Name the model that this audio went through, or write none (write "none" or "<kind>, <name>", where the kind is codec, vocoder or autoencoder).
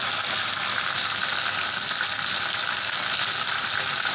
none